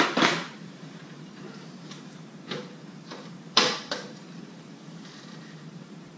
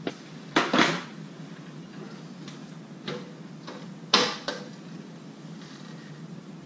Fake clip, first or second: first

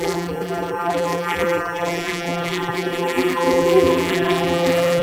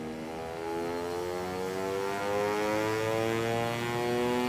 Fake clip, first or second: first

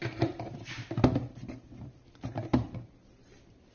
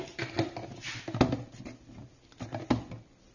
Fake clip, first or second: first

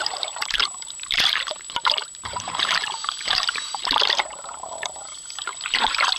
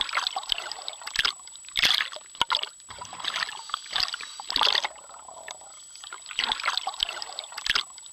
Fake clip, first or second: first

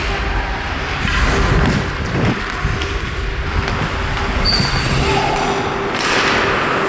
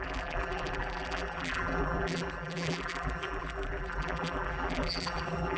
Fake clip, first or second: second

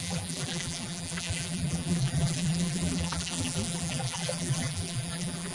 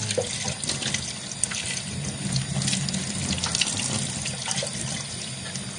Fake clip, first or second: first